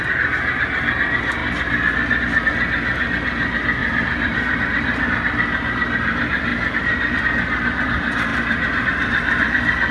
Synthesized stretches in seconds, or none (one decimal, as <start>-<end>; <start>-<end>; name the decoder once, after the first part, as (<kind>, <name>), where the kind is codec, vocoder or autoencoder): 3.8-5.0 (vocoder, BigVGAN v2); 6.5-7.2; 8.3-9.9